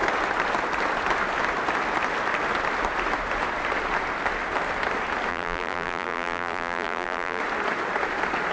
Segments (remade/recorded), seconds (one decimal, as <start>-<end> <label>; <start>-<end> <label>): 0.0-5.3 recorded; 5.3-7.4 remade; 7.4-8.5 recorded